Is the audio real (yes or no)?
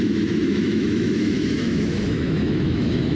no